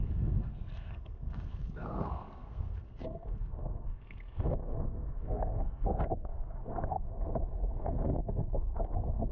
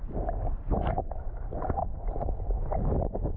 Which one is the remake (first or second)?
first